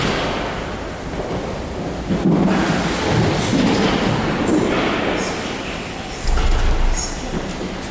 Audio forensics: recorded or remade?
recorded